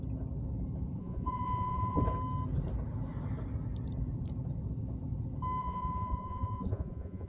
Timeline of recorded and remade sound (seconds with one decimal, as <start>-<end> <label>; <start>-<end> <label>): 0.0-1.0 recorded; 1.0-2.0 remade; 2.0-5.6 recorded; 5.6-7.3 remade